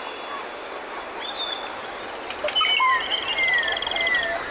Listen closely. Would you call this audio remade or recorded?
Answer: recorded